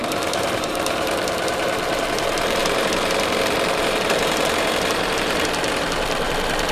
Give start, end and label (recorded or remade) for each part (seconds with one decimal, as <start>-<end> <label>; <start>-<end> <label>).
0.0-6.7 remade